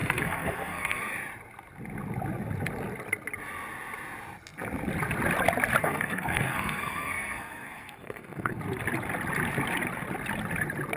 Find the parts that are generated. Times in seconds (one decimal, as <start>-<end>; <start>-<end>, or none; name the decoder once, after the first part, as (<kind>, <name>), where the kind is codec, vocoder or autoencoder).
0.0-1.0 (codec, SNAC); 5.8-8.6